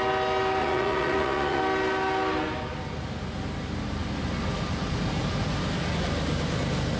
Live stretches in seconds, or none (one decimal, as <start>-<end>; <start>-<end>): 0.0-0.6; 1.6-7.0